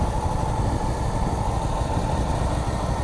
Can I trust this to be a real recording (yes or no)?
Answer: yes